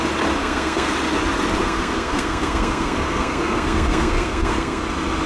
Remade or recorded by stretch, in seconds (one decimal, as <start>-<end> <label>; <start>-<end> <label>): 0.0-0.4 recorded; 0.4-0.9 remade; 0.9-1.6 recorded; 1.6-4.8 remade; 4.8-5.3 recorded